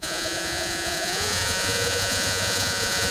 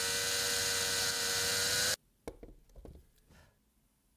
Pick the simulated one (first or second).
first